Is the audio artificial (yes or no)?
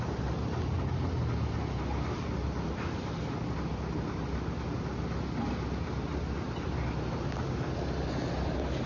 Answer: no